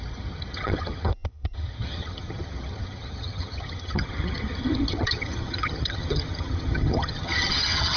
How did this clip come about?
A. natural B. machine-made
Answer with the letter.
B